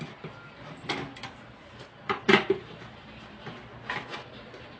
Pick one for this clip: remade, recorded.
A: recorded